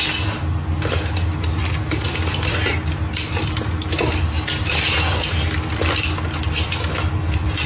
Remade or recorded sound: recorded